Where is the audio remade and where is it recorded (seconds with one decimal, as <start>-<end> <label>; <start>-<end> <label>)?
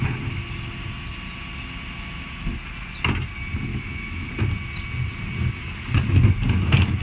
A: 0.0-3.7 recorded; 3.7-4.3 remade; 4.3-7.0 recorded